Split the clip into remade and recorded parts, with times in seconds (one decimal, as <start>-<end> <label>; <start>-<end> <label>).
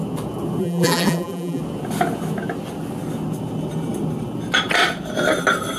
0.0-0.6 recorded; 0.6-1.6 remade; 1.6-5.8 recorded